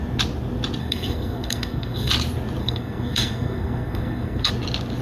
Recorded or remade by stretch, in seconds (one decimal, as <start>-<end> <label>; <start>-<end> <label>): 0.0-0.8 recorded; 0.8-2.1 remade; 2.1-2.6 recorded; 2.6-4.5 remade; 4.5-5.0 recorded